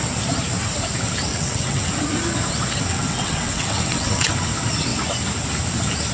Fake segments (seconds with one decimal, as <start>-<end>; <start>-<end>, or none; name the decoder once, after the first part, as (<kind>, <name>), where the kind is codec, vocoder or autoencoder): 1.3-1.9 (vocoder, WaveNeXt); 2.9-4.3

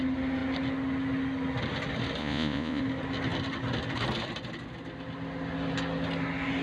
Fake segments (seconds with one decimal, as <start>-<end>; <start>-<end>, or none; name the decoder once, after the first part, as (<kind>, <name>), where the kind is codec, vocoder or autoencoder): 2.2-2.8 (vocoder, Vocos)

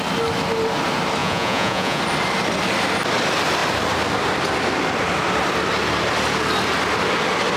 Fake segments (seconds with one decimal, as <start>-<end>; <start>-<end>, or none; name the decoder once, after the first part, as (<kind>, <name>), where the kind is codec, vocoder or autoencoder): 1.2-2.0 (vocoder, Vocos)

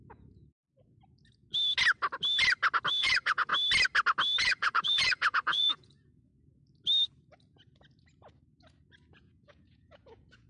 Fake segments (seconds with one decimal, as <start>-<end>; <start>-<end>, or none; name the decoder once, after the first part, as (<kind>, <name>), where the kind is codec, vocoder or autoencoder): 0.0-0.4 (vocoder, Vocos); 3.0-3.5; 4.4-6.3; 9.1-10.5

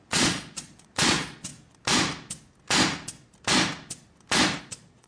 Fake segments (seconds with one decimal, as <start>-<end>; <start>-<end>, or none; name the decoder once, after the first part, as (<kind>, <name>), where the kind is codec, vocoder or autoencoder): 0.0-1.5 (vocoder, Vocos); 4.6-5.1

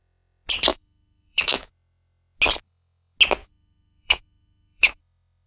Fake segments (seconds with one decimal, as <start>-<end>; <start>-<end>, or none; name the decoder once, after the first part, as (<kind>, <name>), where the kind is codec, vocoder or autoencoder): 0.7-1.7 (autoencoder, DAC-VAE); 3.4-5.0